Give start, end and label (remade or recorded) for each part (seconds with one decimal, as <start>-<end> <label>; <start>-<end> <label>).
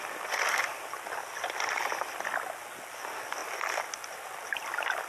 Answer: 0.0-5.1 recorded